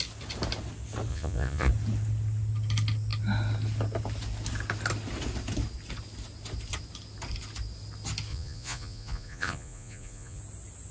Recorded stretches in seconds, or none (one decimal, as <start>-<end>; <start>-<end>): 0.0-1.1; 1.7-8.3; 10.4-10.9